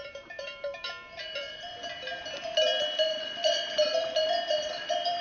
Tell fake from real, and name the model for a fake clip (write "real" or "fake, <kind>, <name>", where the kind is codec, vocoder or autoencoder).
fake, vocoder, BigVGAN v2